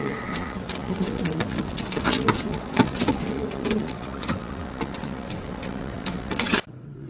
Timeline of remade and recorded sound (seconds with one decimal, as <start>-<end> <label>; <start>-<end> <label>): 0.0-7.1 remade